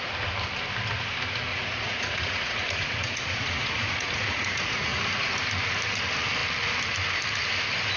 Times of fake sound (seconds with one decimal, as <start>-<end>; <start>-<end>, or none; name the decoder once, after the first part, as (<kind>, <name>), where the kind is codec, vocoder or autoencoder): 1.5-5.0 (vocoder, Vocos)